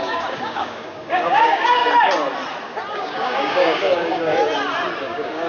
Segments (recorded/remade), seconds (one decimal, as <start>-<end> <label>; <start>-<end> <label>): 0.0-1.8 remade; 1.8-2.9 recorded; 2.9-4.3 remade; 4.3-5.0 recorded; 5.0-5.5 remade